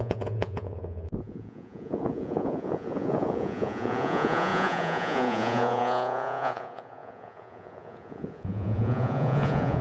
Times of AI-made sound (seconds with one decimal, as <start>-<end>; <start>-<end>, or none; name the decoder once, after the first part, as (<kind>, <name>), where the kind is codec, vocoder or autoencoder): 0.0-9.8 (vocoder, Vocos)